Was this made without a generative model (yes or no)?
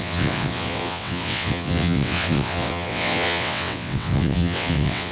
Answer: no